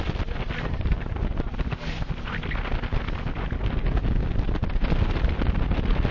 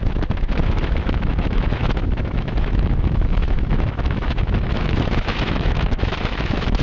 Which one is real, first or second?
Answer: first